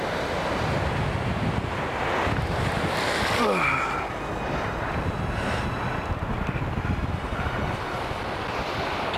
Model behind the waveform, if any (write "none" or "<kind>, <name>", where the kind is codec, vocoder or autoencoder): none